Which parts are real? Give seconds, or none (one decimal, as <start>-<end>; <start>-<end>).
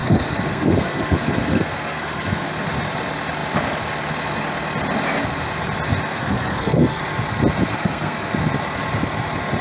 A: 2.5-6.1; 7.0-7.7; 8.3-9.6